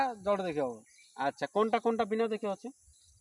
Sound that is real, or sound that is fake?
real